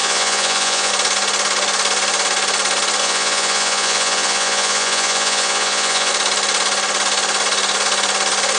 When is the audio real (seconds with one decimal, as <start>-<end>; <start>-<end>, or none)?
0.9-3.0; 6.1-8.6